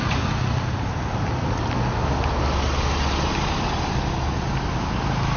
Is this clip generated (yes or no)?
no